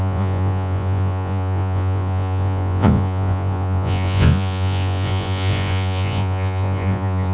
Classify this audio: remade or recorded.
remade